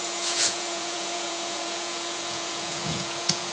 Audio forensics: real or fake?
fake